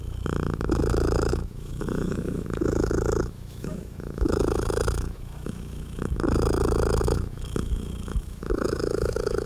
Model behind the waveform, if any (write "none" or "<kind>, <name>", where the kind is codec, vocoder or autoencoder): autoencoder, DAC-VAE